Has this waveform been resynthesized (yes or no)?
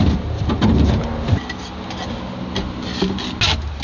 no